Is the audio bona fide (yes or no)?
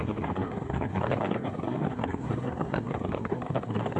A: no